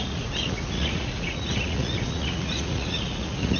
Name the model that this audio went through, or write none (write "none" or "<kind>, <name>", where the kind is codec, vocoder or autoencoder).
vocoder, Vocos